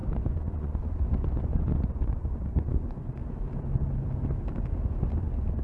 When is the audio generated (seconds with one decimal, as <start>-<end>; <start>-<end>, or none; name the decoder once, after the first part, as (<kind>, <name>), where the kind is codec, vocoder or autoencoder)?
0.0-3.1 (vocoder, Vocos)